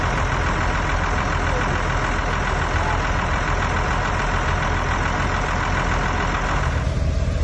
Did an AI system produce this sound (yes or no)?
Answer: no